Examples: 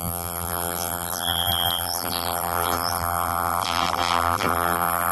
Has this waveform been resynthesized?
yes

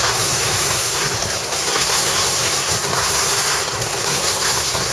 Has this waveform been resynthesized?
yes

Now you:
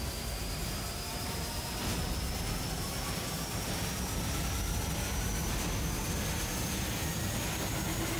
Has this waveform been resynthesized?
no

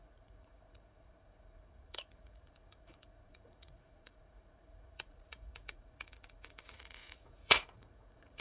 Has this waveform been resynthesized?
yes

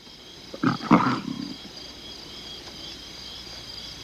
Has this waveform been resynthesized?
no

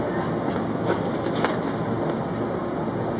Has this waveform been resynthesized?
no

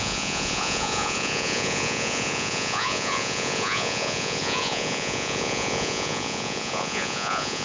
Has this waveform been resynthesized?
yes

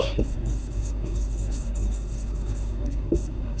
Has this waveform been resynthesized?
yes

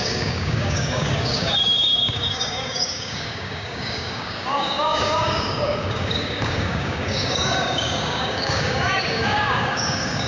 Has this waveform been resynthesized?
yes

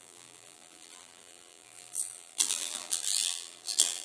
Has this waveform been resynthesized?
yes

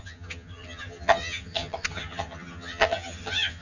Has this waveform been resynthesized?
yes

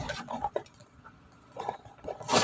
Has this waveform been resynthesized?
yes